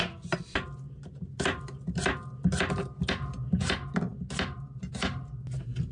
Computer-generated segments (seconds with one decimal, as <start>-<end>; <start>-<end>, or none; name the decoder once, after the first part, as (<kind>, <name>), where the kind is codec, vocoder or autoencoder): none